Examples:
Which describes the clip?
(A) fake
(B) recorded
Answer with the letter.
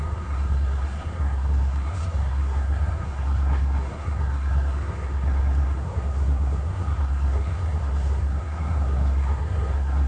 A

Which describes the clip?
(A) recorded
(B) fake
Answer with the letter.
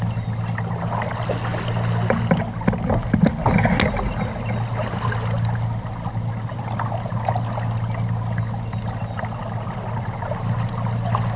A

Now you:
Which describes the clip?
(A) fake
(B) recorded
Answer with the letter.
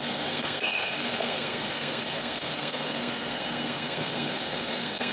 A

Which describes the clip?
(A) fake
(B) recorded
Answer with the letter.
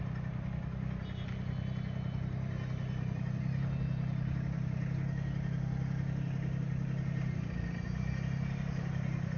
B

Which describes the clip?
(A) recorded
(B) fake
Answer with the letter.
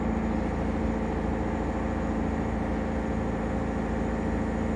A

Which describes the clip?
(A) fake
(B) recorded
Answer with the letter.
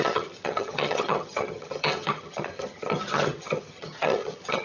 A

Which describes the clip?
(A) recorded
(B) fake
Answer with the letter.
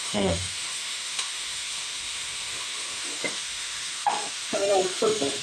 B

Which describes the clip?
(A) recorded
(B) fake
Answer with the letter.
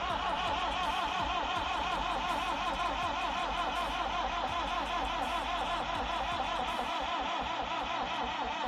B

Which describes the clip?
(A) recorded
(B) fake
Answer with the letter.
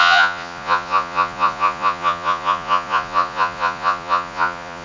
B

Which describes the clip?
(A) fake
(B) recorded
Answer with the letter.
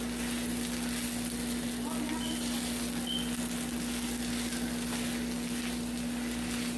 B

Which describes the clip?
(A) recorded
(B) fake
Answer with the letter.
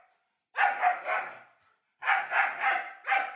A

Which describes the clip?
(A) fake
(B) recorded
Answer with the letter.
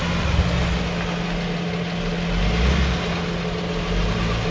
B